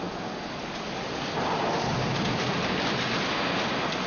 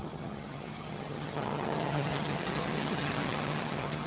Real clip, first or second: first